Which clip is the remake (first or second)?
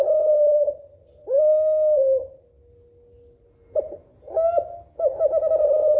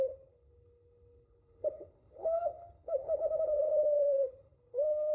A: second